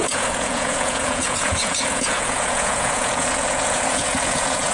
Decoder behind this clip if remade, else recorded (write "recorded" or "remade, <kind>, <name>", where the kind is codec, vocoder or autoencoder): remade, vocoder, Vocos